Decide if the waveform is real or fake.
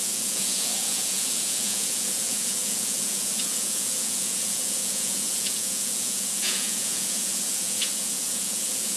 fake